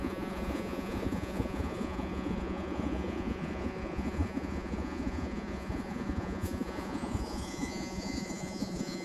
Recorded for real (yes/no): no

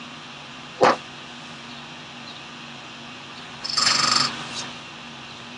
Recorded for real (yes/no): no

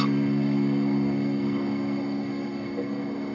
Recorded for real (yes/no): no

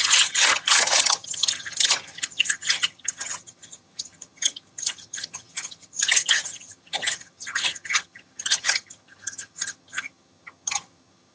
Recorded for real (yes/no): no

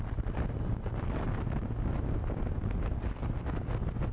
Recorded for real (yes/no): yes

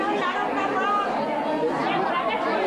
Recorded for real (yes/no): yes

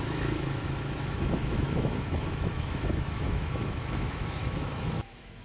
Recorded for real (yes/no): no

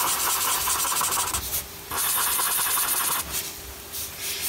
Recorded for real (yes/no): yes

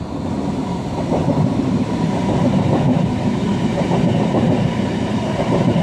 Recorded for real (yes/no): no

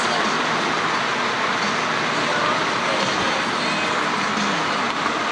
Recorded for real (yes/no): yes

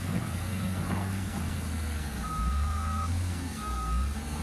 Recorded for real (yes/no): no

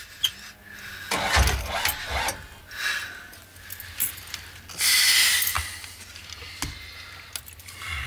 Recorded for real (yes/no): yes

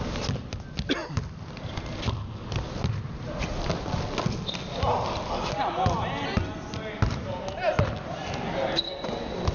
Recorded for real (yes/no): yes